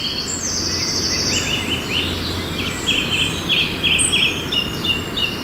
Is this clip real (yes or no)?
yes